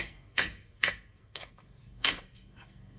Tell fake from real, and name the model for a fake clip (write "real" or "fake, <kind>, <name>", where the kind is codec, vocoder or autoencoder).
fake, codec, SNAC